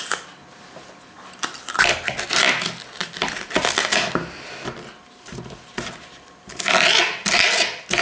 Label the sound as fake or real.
real